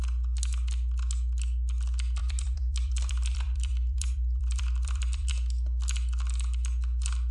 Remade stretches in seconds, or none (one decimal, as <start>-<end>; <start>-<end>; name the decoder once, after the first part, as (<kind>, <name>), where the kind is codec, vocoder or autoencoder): 2.2-5.3 (vocoder, BigVGAN v2)